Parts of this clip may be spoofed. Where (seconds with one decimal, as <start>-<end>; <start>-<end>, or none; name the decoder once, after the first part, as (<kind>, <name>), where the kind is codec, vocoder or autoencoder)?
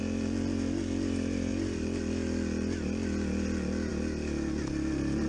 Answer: none